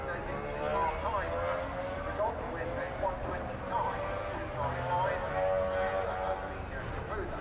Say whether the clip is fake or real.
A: real